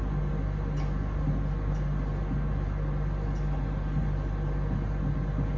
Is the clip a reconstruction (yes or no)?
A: no